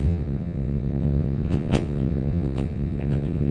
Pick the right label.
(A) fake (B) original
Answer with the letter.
A